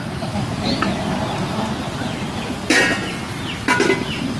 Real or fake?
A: real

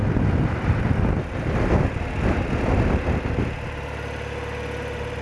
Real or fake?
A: real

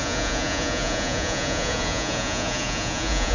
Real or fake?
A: fake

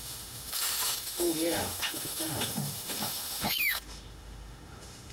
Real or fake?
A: fake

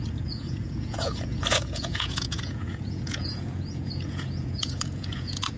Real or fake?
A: fake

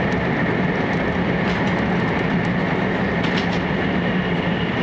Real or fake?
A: real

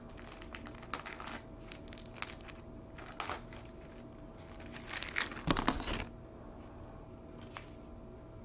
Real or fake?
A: real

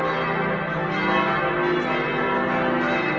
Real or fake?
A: real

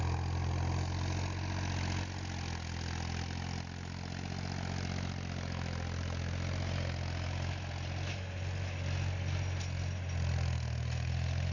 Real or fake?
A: real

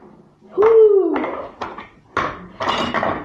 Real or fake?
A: real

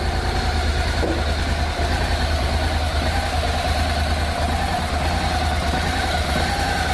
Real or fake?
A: real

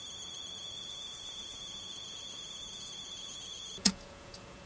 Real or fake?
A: fake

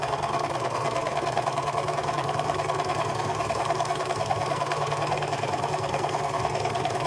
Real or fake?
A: fake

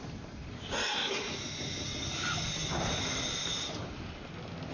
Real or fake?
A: real